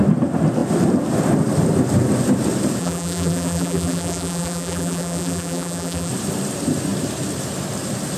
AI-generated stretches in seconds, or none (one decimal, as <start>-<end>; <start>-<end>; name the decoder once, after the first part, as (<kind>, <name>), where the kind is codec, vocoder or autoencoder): 2.8-6.1 (vocoder, BigVGAN v2)